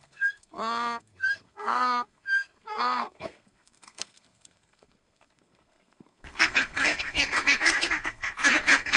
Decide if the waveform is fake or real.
fake